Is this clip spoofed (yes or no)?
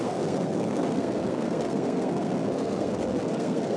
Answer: yes